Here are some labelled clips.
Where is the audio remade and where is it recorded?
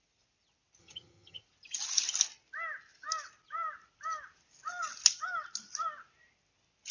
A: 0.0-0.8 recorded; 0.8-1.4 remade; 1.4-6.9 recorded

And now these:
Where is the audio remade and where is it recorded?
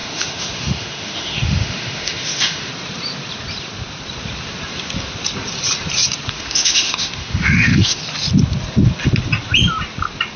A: 0.0-2.7 remade; 2.7-6.3 recorded; 6.3-8.0 remade; 8.0-10.4 recorded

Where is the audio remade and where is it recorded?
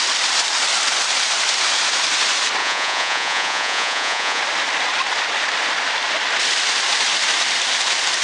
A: 0.0-2.6 recorded; 2.6-4.4 remade; 4.4-8.2 recorded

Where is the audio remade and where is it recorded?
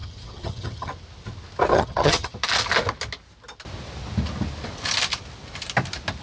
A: 0.0-0.9 remade; 0.9-1.7 recorded; 1.7-2.3 remade; 2.3-6.2 recorded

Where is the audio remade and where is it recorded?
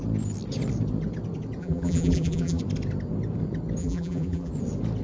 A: 0.0-1.6 recorded; 1.6-2.6 remade; 2.6-3.8 recorded; 3.8-4.5 remade; 4.5-5.0 recorded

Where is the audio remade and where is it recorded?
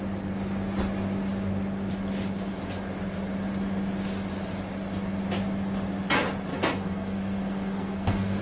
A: 0.0-6.5 recorded; 6.5-8.4 remade